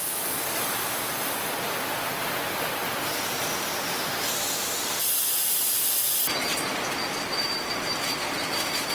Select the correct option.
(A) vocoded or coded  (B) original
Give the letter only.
B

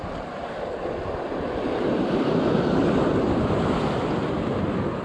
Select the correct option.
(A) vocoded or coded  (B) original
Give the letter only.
B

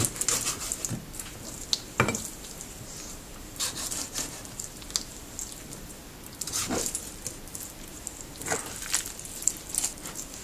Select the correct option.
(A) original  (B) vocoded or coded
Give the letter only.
A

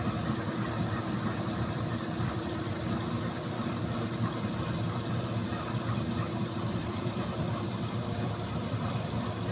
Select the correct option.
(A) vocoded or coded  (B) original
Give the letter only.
A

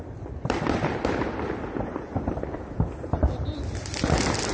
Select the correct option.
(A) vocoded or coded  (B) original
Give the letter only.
A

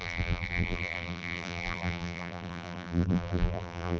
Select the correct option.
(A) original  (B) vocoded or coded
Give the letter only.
B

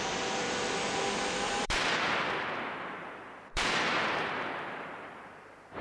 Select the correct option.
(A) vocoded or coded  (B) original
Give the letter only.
A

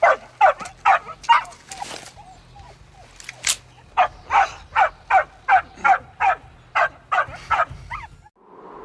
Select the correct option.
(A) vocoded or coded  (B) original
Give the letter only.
B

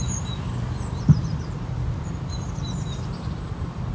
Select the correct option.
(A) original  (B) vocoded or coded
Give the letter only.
B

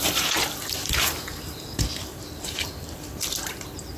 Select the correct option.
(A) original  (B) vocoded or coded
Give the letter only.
B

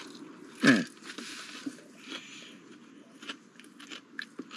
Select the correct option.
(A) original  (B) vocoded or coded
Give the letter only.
A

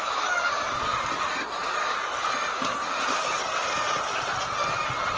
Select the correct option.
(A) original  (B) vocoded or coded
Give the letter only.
A